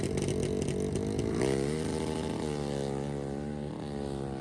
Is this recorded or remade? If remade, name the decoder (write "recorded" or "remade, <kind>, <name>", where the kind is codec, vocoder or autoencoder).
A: recorded